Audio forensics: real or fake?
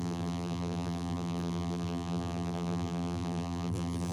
fake